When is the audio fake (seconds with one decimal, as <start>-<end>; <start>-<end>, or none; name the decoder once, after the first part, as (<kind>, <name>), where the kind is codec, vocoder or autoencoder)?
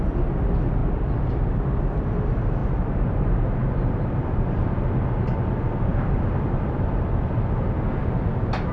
5.9-6.9 (vocoder, BigVGAN v2)